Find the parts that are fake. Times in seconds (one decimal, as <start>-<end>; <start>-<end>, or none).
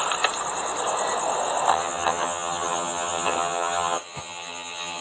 1.7-5.0